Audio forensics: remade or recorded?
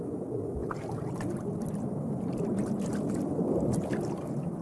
recorded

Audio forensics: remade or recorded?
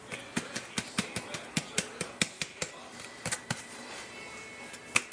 recorded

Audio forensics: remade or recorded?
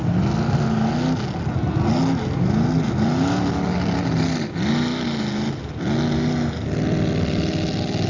recorded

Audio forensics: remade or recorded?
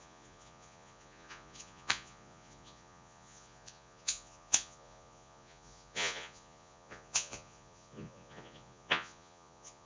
remade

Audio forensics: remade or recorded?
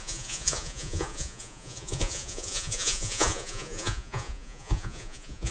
remade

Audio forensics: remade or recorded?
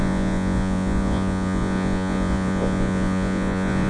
remade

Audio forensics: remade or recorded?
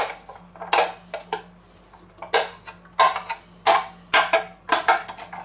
recorded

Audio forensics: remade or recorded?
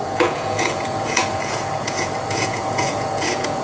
remade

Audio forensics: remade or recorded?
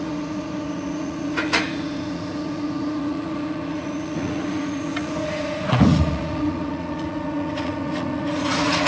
remade